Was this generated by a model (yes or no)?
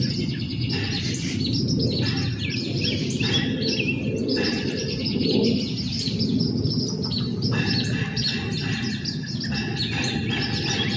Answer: no